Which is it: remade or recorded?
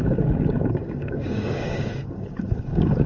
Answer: remade